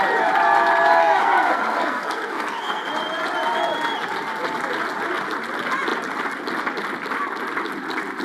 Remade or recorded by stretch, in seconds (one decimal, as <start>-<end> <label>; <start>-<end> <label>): 0.0-1.0 recorded; 1.0-2.9 remade; 2.9-8.2 recorded